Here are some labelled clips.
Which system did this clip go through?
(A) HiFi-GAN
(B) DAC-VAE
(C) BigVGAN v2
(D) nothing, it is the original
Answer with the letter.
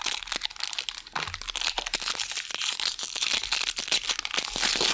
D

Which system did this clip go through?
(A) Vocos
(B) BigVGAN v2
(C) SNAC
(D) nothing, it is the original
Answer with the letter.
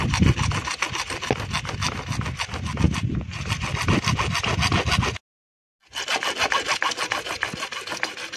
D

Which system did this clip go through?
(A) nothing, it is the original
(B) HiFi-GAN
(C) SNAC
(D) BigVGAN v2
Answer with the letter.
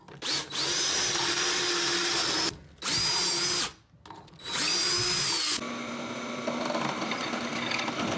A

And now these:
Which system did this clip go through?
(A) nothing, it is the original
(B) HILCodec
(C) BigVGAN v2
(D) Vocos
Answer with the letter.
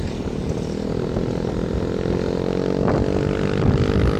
A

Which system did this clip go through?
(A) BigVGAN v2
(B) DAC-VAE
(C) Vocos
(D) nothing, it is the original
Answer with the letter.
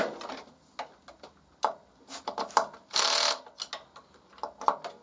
D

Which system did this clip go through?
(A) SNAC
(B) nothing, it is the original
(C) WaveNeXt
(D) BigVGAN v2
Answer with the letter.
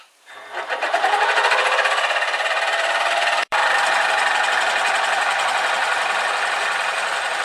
D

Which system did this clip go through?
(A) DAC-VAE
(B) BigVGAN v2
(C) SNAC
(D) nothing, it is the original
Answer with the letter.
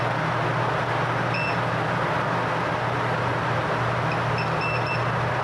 D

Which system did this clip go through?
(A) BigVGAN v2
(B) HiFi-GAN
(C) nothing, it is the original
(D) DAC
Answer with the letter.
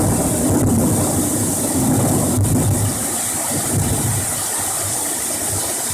C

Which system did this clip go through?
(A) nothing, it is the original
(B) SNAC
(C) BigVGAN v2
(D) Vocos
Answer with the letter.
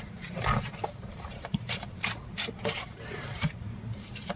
C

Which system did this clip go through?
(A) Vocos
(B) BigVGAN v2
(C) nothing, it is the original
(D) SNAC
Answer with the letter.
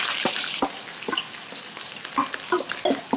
C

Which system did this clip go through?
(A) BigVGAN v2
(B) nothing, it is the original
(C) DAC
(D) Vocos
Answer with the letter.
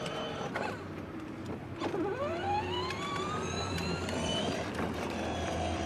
A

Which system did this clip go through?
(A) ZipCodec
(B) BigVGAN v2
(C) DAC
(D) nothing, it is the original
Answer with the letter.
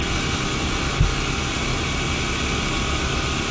D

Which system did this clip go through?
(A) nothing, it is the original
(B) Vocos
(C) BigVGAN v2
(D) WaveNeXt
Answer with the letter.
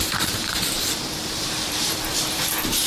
C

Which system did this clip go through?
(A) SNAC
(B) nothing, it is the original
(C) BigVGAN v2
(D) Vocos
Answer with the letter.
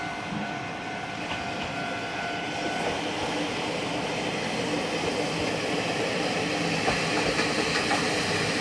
B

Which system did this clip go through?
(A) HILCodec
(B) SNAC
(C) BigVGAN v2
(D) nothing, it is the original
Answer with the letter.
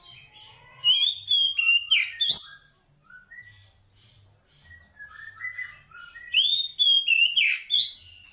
D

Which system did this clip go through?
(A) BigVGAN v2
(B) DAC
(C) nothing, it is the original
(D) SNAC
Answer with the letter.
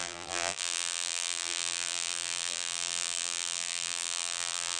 A